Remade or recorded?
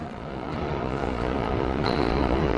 remade